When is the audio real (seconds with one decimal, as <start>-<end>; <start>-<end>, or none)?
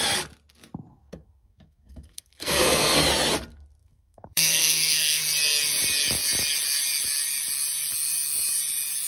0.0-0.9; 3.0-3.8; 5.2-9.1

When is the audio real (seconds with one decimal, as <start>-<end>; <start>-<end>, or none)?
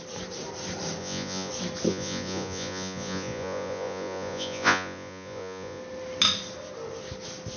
0.0-1.0; 1.5-1.9; 5.8-7.6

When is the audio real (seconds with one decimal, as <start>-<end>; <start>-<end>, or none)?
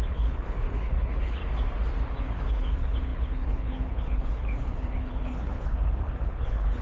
1.4-2.2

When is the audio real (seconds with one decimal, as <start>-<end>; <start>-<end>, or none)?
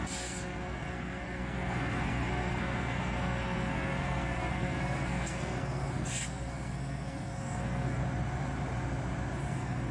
8.0-9.4